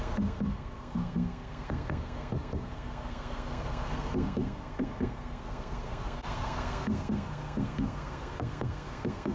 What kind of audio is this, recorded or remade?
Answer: remade